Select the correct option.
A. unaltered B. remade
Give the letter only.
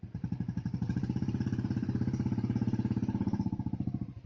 B